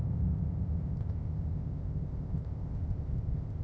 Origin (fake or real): fake